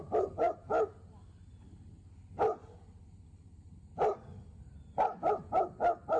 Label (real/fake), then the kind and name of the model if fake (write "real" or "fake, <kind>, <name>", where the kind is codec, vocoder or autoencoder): real